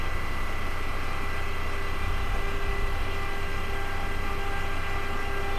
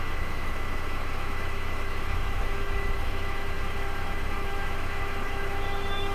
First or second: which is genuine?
first